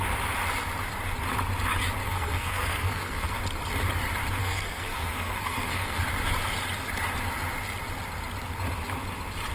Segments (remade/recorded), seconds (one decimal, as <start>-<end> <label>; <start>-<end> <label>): 0.0-2.0 recorded; 2.0-3.4 remade; 3.4-4.4 recorded; 4.4-6.0 remade; 6.0-9.5 recorded